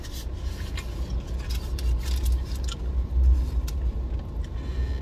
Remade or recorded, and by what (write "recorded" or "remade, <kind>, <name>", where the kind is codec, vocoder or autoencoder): recorded